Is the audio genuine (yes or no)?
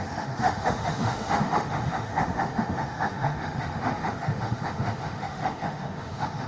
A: no